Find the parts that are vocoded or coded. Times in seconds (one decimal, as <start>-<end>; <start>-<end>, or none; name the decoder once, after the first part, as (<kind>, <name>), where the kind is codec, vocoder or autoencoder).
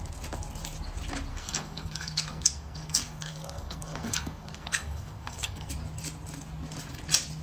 1.3-5.7 (codec, SNAC)